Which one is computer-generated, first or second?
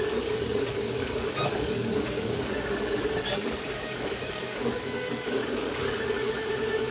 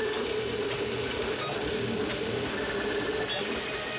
first